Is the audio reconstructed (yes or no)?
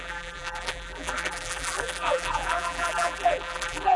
yes